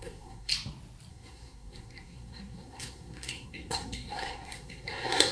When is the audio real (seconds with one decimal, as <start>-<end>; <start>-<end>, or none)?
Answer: 0.5-1.1